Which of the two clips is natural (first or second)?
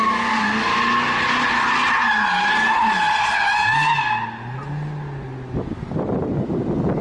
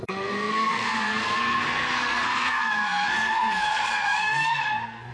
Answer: first